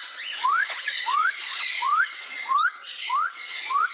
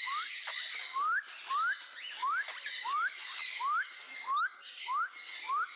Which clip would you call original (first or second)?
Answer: second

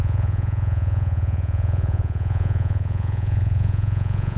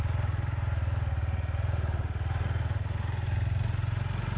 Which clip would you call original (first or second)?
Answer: second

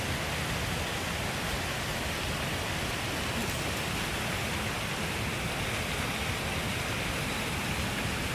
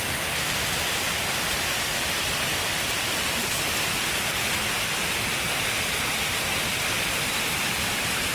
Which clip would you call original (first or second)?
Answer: first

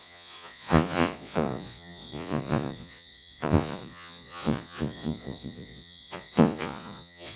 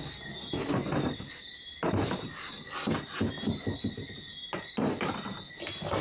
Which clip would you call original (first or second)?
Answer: second